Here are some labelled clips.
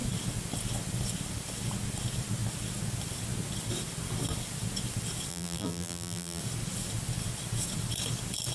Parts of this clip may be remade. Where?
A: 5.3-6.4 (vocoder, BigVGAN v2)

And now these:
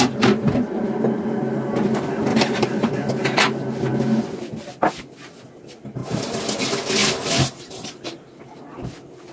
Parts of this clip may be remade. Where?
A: 2.3-3.1 (vocoder, BigVGAN v2); 6.0-6.6; 7.0-8.6

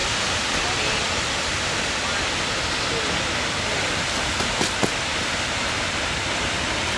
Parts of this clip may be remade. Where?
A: 5.1-6.4 (vocoder, BigVGAN v2)

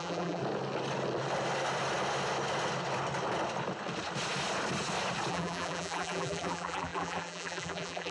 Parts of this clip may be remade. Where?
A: 0.0-0.4 (vocoder, BigVGAN v2); 5.3-8.1